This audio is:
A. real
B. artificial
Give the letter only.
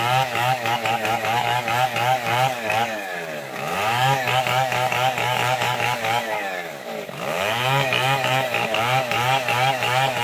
B